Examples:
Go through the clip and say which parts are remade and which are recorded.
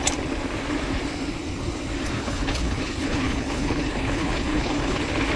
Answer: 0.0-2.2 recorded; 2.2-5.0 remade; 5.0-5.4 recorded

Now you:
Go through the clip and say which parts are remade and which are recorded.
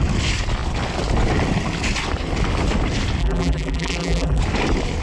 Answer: 0.0-3.2 recorded; 3.2-4.4 remade; 4.4-5.0 recorded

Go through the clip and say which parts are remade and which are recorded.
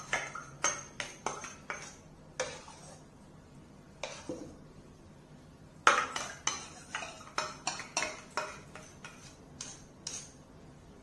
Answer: 0.0-11.0 recorded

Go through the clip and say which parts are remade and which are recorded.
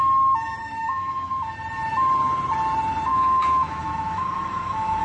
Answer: 0.0-0.6 recorded; 0.6-1.3 remade; 1.3-3.1 recorded; 3.1-5.0 remade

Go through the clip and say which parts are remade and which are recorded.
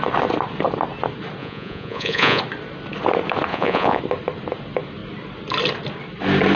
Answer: 0.0-1.4 recorded; 1.4-2.4 remade; 2.4-3.5 recorded; 3.5-4.0 remade; 4.0-6.6 recorded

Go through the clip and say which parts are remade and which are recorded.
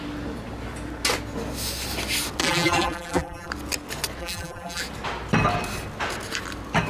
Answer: 0.0-2.4 recorded; 2.4-3.5 remade; 3.5-4.2 recorded; 4.2-4.8 remade; 4.8-6.9 recorded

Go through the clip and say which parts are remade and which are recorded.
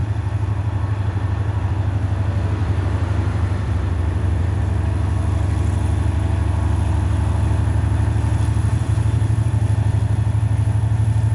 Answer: 0.0-1.7 remade; 1.7-2.6 recorded; 2.6-4.6 remade; 4.6-8.7 recorded; 8.7-9.5 remade; 9.5-11.3 recorded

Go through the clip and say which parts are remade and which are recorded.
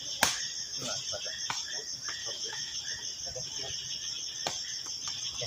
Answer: 0.0-2.2 recorded; 2.2-2.8 remade; 2.8-5.5 recorded